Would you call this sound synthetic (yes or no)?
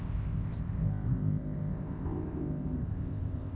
yes